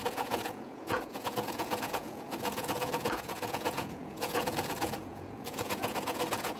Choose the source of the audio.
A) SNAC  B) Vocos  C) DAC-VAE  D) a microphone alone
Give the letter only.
B